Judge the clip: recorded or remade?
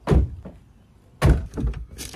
recorded